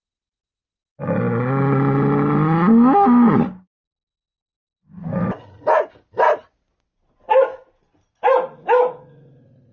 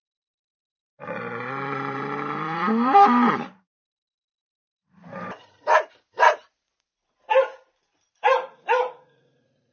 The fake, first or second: second